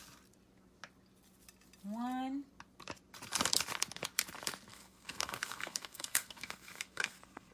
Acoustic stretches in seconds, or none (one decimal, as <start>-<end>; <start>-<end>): 0.0-4.7